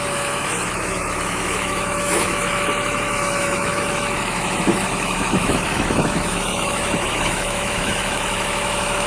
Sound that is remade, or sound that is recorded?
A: remade